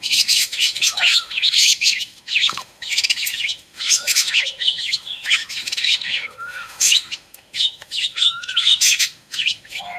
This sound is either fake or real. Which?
fake